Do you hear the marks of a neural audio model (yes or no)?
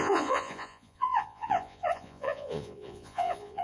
yes